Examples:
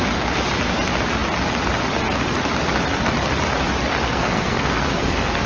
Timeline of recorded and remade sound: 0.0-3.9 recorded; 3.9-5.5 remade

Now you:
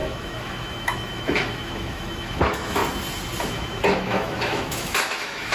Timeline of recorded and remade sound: 0.0-2.8 remade; 2.8-3.4 recorded; 3.4-5.5 remade

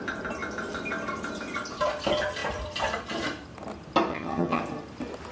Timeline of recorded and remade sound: 0.0-4.1 recorded; 4.1-4.6 remade; 4.6-5.3 recorded

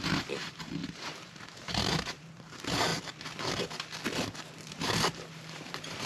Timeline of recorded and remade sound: 0.0-2.9 remade; 2.9-4.7 recorded; 4.7-6.1 remade

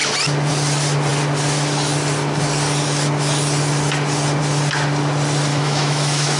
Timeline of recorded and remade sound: 0.0-5.5 recorded; 5.5-6.4 remade

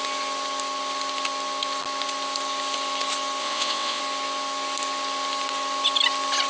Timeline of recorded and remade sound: 0.0-3.4 recorded; 3.4-4.0 remade; 4.0-6.5 recorded

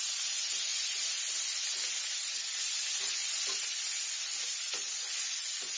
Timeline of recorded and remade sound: 0.0-5.8 recorded

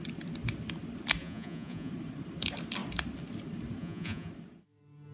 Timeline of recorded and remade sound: 0.0-1.2 recorded; 1.2-1.9 remade; 1.9-3.8 recorded; 3.8-4.3 remade; 4.3-5.1 recorded